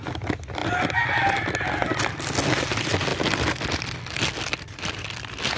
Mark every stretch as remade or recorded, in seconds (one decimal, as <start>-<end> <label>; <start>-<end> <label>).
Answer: 0.0-5.6 recorded